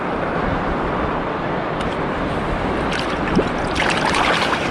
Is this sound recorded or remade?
recorded